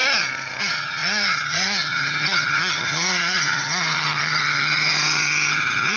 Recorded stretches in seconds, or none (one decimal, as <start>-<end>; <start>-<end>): 0.0-0.6; 4.9-5.5